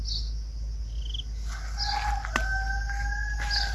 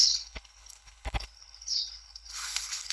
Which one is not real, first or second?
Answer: second